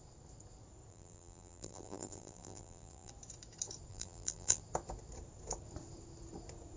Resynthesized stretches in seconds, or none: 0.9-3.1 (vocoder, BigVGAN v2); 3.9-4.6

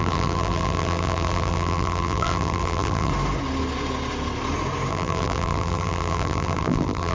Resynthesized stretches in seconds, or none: 0.0-3.1 (vocoder, BigVGAN v2); 4.9-7.1

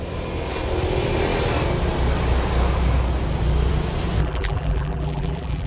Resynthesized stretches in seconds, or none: 4.2-5.7 (vocoder, BigVGAN v2)

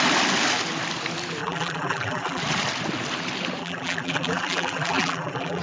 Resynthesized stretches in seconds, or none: 1.4-2.4 (vocoder, BigVGAN v2); 3.6-5.6

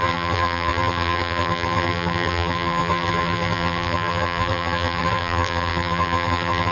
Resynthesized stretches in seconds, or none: 0.0-6.7 (vocoder, BigVGAN v2)

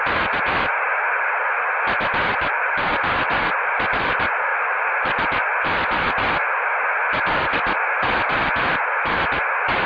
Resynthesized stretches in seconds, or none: 2.3-2.9 (vocoder, BigVGAN v2)

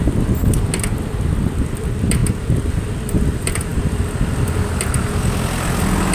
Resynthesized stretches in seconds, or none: none

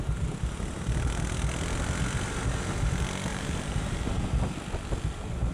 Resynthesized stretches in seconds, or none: 3.3-4.6 (vocoder, BigVGAN v2)